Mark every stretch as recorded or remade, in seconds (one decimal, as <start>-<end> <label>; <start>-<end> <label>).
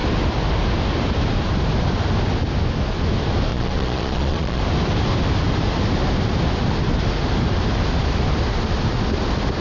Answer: 0.0-3.5 recorded; 3.5-4.6 remade; 4.6-9.6 recorded